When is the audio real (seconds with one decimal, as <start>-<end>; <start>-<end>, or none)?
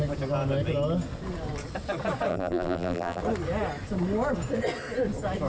0.0-2.3; 3.2-5.5